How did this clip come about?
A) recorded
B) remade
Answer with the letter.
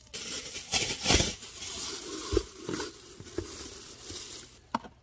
A